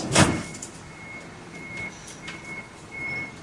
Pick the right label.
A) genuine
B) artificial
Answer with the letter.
B